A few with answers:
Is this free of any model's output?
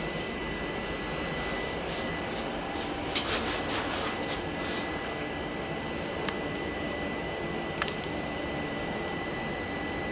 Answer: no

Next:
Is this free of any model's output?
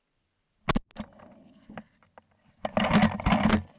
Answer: yes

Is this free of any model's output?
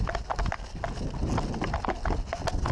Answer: yes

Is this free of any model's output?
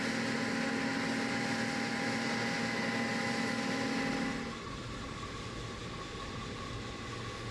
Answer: yes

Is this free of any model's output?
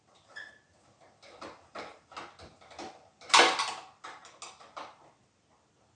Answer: yes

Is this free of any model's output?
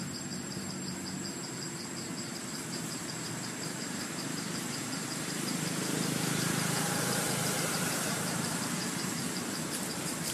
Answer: no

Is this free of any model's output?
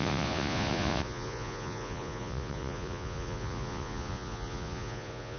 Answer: no